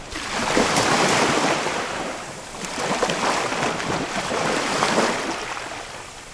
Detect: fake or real fake